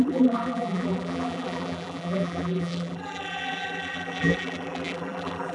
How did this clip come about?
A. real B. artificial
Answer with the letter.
B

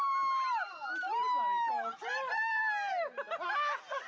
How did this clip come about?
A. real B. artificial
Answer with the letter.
A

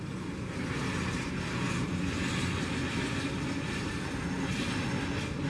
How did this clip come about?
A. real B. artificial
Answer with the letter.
A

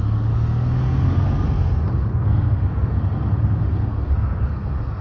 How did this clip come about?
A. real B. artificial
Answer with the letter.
B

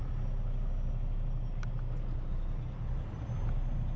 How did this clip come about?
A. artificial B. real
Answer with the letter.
B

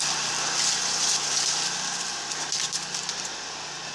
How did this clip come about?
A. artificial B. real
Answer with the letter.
A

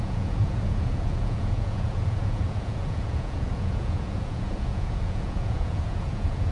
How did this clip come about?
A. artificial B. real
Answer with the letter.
A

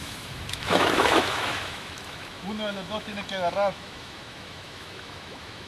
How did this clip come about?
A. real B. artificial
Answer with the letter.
B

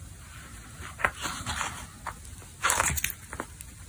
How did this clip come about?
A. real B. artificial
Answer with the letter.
A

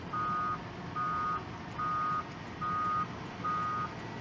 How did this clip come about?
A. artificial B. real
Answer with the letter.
B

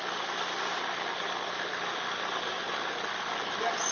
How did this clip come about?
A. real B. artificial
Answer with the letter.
A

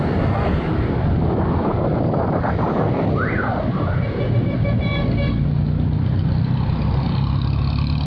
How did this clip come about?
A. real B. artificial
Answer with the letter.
A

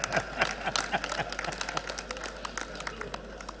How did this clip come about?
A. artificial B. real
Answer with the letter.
B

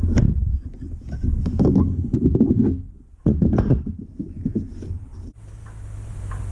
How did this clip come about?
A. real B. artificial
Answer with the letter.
A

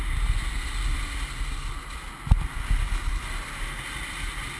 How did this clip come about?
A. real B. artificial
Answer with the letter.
A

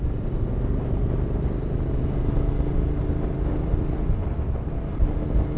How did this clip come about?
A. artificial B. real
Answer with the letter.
B